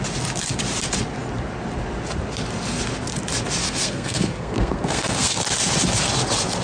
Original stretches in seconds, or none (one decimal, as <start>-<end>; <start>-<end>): 0.0-3.6; 5.4-6.6